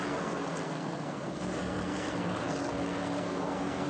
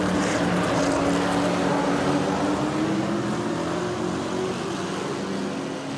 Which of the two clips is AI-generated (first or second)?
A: first